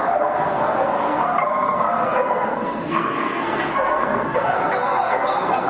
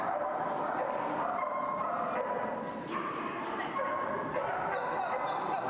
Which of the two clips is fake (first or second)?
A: first